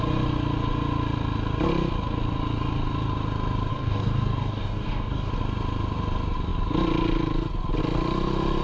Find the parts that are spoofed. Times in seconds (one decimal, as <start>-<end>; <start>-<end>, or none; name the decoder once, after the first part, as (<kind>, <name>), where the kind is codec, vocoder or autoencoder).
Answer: 3.7-5.3 (codec, DAC)